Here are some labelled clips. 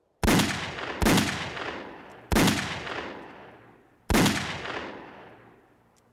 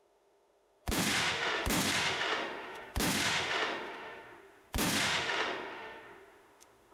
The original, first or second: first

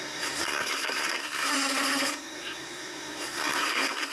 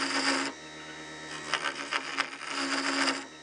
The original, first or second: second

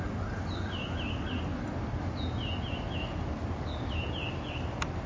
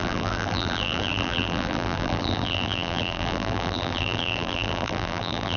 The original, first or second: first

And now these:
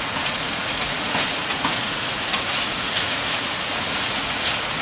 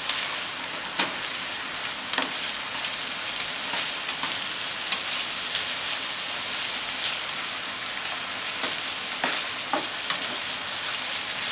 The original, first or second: second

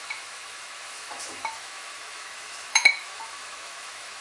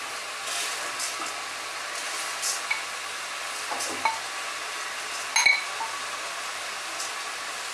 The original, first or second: second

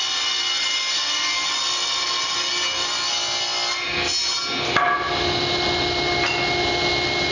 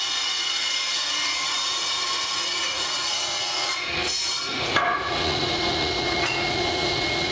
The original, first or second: first